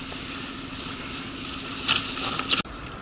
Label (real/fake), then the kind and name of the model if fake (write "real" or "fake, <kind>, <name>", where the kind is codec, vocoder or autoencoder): real